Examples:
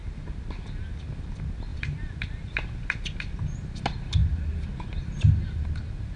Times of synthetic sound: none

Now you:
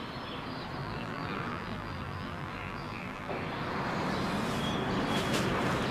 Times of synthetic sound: 0.8-3.3 (vocoder, BigVGAN v2)